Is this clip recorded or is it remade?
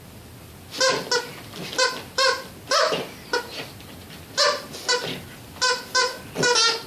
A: recorded